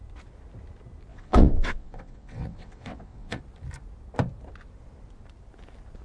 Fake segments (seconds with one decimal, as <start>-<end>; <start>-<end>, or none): 1.1-3.4